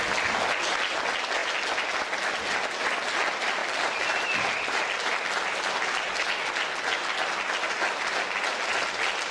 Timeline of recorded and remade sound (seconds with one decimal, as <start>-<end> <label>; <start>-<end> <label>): 0.0-9.3 recorded